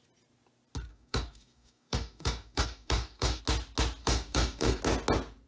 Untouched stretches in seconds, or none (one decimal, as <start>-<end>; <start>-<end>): 0.0-0.9; 3.4-4.0; 4.8-5.5

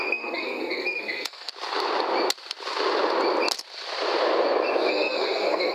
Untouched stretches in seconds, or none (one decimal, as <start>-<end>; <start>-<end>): 1.5-4.9

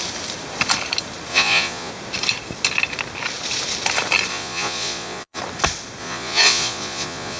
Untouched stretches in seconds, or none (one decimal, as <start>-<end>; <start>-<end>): 0.0-1.3; 1.9-4.3; 5.4-6.0